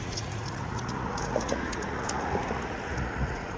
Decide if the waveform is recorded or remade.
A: remade